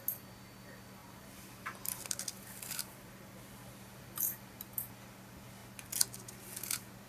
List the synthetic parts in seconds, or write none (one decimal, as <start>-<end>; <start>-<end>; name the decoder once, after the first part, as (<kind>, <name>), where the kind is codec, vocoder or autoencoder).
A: 1.0-4.9 (vocoder, BigVGAN v2)